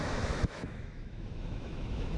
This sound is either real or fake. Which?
fake